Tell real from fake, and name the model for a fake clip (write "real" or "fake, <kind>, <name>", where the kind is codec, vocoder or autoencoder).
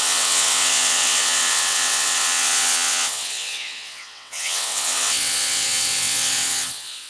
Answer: fake, vocoder, WaveNeXt